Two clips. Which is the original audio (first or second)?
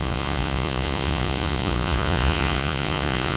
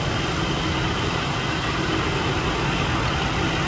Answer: second